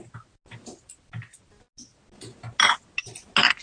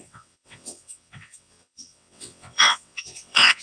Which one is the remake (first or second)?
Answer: second